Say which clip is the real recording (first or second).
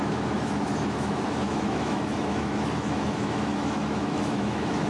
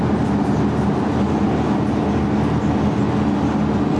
second